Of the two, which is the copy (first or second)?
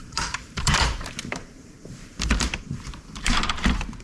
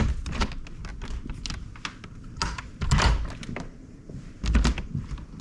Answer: first